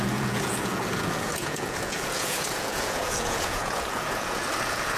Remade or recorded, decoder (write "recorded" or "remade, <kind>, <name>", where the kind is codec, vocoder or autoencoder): remade, vocoder, Vocos